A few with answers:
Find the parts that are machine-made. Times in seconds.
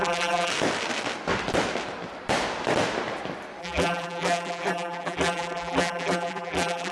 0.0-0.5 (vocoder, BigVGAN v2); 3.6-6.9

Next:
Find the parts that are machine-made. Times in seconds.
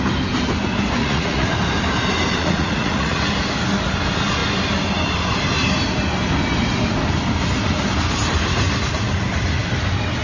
1.0-1.5 (vocoder, Vocos); 2.4-3.2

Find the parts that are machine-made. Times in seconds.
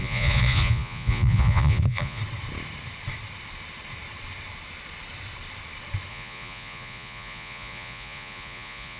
0.0-2.2 (vocoder, Vocos); 6.1-9.0